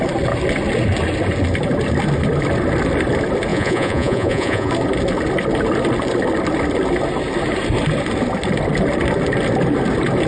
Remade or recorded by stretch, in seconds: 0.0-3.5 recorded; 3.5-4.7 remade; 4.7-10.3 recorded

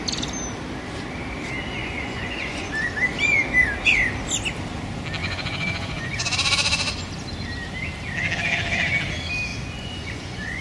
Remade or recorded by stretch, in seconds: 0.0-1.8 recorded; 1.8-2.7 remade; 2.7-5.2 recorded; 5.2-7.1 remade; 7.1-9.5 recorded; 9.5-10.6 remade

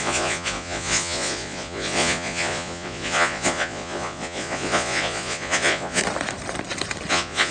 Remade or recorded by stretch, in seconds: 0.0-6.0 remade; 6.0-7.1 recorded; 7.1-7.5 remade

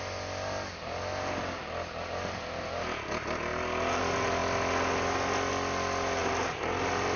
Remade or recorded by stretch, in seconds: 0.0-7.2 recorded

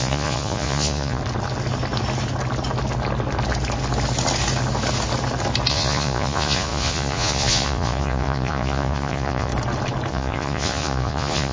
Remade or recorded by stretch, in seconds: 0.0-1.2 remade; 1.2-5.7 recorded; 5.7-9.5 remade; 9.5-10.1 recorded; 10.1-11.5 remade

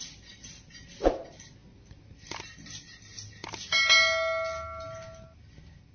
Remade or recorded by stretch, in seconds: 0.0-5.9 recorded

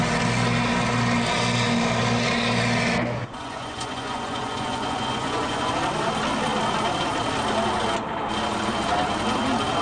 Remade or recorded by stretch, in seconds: 0.0-3.2 recorded; 3.2-5.7 remade; 5.7-9.8 recorded